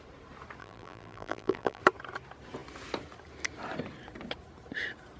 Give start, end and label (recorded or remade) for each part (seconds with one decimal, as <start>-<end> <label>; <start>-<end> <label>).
0.0-0.6 recorded; 0.6-1.8 remade; 1.8-5.2 recorded